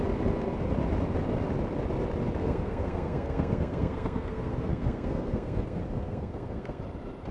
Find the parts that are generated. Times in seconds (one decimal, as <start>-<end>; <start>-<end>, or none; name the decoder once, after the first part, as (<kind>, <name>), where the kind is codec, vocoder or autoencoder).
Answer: 2.4-6.8 (codec, SNAC)